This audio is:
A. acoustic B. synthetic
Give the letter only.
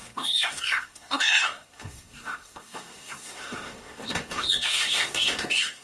B